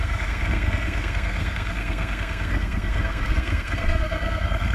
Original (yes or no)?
no